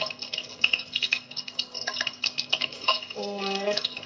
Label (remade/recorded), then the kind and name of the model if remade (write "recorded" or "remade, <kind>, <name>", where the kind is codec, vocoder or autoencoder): remade, codec, SNAC